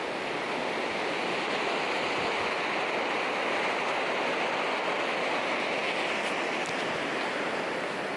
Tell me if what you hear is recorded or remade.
recorded